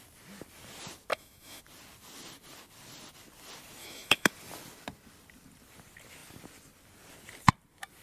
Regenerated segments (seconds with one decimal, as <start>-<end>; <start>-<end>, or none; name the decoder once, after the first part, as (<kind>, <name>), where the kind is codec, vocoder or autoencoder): 1.1-1.6 (autoencoder, DAC-VAE); 3.8-4.3